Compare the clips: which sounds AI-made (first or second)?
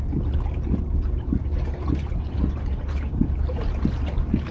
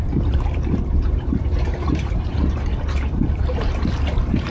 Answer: second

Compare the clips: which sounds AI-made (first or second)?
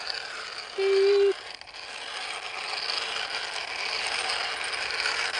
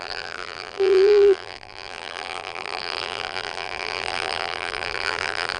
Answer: second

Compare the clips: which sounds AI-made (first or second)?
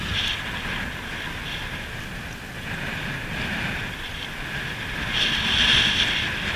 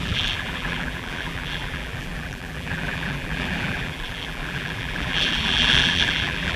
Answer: second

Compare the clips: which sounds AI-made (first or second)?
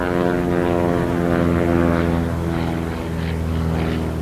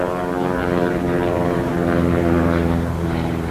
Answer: second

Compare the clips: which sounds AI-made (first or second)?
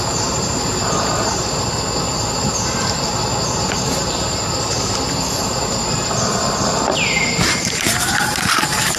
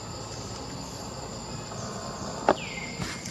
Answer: first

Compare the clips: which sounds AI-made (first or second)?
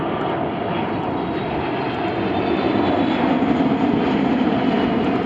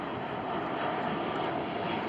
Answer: second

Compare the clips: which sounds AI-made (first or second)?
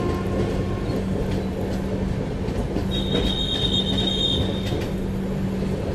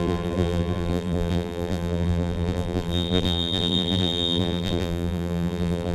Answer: second